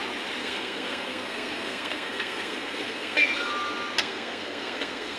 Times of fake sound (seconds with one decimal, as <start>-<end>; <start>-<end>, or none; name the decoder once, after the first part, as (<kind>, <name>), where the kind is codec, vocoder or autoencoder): 0.4-3.5 (codec, SNAC); 4.0-5.2